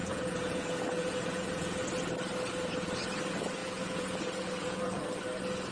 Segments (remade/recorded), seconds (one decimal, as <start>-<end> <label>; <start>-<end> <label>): 0.0-1.8 remade; 1.8-3.6 recorded; 3.6-5.0 remade; 5.0-5.7 recorded